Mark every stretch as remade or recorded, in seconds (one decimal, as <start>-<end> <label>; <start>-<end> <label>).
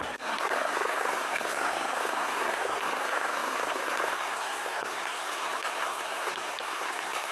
0.0-7.3 remade